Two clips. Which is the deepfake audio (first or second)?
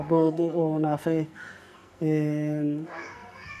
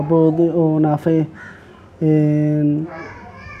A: first